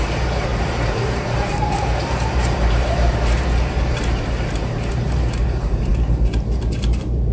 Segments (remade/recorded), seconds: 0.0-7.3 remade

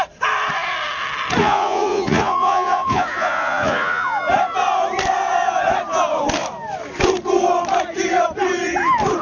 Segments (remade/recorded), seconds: 0.0-1.4 recorded; 1.4-4.2 remade; 4.2-9.2 recorded

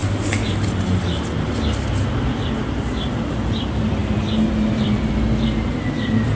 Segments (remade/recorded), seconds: 0.0-1.2 remade; 1.2-4.0 recorded; 4.0-5.1 remade; 5.1-6.4 recorded

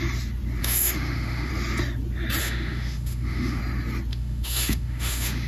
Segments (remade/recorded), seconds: 0.0-0.6 recorded; 0.6-1.5 remade; 1.5-2.4 recorded; 2.4-3.6 remade; 3.6-4.1 recorded; 4.1-5.5 remade